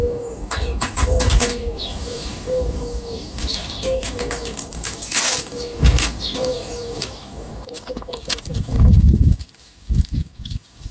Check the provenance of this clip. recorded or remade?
remade